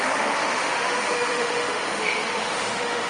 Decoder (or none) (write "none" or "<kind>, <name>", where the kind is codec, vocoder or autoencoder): autoencoder, DAC-VAE